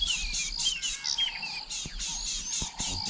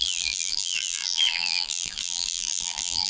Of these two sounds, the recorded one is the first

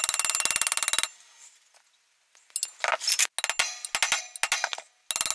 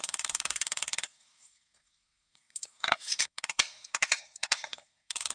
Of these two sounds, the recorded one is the first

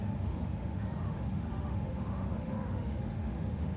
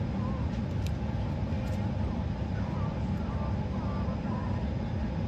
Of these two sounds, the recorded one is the second